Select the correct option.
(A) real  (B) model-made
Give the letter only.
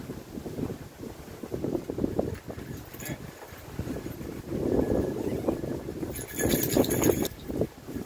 A